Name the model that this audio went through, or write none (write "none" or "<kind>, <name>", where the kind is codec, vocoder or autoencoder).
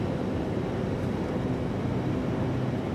none